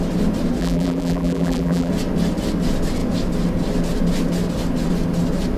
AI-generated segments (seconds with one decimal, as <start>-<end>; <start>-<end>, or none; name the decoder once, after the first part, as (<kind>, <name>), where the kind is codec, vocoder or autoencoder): 0.6-1.9 (vocoder, BigVGAN v2)